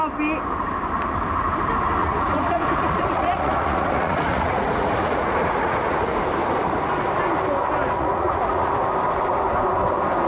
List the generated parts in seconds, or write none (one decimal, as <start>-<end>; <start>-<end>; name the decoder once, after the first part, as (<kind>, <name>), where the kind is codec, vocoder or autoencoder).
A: 2.0-6.2 (vocoder, Vocos); 7.8-8.7